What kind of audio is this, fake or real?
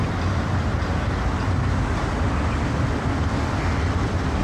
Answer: real